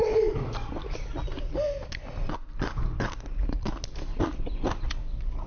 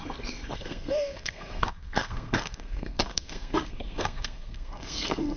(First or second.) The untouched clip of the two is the first